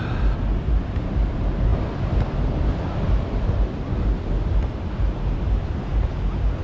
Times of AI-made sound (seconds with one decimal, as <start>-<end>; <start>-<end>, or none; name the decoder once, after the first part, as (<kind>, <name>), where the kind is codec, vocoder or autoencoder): none